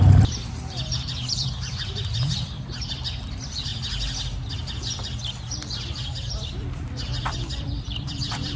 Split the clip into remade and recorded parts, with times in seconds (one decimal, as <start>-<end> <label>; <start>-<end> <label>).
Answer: 0.0-3.7 remade; 3.7-4.5 recorded; 4.5-8.6 remade